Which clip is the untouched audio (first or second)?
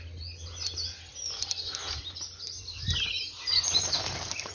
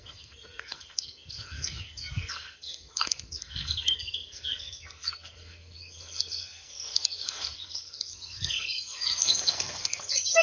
first